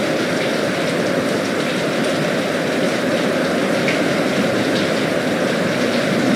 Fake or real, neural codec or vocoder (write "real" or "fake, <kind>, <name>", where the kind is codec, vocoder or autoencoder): fake, vocoder, BigVGAN v2